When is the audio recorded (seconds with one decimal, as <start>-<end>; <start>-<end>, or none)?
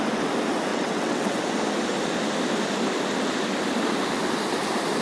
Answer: 0.0-0.7; 1.4-5.0